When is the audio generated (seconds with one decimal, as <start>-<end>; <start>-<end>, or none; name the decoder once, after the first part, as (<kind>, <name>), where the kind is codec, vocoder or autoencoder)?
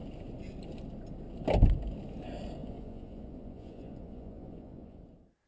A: 2.6-5.0 (vocoder, Vocos)